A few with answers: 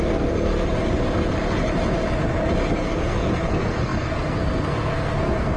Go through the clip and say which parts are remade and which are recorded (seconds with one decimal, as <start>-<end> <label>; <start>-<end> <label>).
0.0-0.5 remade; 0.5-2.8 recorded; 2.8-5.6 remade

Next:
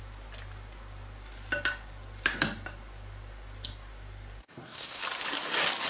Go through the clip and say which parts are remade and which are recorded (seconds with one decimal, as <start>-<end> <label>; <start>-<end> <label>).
0.0-4.4 recorded; 4.4-5.0 remade; 5.0-5.9 recorded

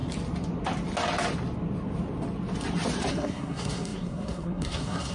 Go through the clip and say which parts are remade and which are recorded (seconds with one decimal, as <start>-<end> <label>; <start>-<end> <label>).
0.0-3.1 recorded; 3.1-5.1 remade

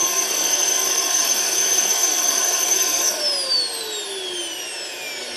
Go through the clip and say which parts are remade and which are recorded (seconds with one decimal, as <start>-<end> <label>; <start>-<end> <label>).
0.0-3.2 remade; 3.2-5.4 recorded

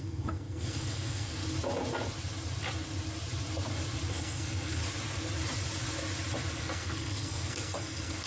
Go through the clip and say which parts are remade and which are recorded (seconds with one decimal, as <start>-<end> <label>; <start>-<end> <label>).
0.0-1.4 remade; 1.4-4.1 recorded; 4.1-4.8 remade; 4.8-6.6 recorded; 6.6-8.3 remade